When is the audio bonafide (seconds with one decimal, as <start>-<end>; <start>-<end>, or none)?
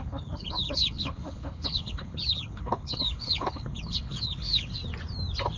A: 4.8-5.6